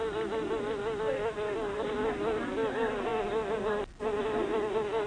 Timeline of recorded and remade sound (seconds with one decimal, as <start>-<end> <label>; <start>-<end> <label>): 0.0-5.1 recorded